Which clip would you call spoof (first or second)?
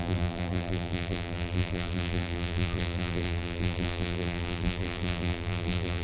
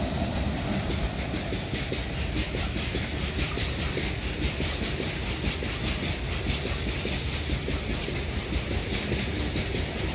first